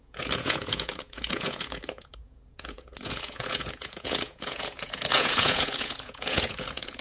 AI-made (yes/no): yes